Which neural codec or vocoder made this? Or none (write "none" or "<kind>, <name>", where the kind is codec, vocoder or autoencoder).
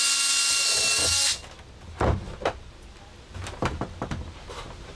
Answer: none